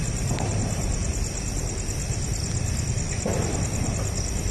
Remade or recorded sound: recorded